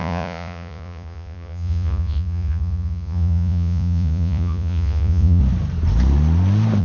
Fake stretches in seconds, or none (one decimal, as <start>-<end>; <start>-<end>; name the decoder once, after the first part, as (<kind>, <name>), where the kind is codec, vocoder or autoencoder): 0.0-5.4 (vocoder, Vocos)